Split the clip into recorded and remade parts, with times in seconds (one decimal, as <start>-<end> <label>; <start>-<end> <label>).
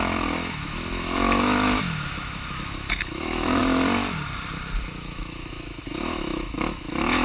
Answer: 0.0-3.6 remade; 3.6-4.8 recorded; 4.8-7.2 remade